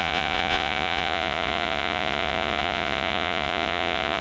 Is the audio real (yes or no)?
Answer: no